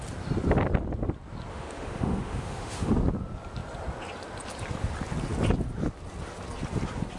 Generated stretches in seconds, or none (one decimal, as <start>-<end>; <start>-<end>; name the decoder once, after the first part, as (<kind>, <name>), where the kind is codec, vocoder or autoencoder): 1.5-2.9 (autoencoder, DAC-VAE)